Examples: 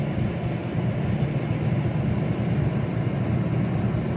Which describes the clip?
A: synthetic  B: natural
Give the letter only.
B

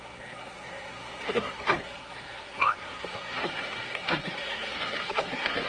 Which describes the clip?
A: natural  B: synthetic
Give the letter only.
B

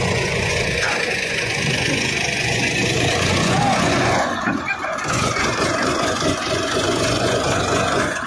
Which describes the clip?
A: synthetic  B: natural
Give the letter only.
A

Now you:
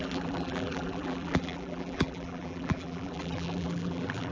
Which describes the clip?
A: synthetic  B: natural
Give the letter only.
A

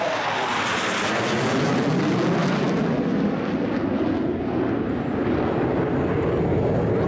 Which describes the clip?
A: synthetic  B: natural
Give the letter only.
B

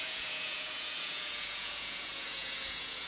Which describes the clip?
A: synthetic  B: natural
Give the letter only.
A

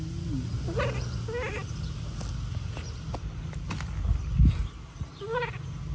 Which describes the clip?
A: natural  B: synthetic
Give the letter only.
A